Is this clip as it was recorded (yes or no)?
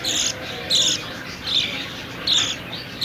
yes